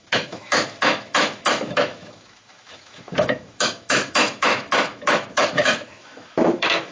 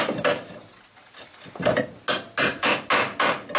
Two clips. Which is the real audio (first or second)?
second